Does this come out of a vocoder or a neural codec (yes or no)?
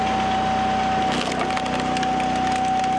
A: no